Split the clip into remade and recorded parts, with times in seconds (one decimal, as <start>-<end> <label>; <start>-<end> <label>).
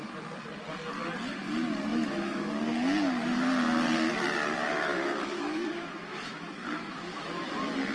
0.0-1.9 recorded; 1.9-2.5 remade; 2.5-4.9 recorded; 4.9-7.5 remade; 7.5-7.9 recorded